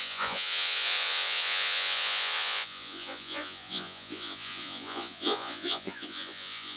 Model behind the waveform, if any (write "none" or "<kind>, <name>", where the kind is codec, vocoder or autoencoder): vocoder, Vocos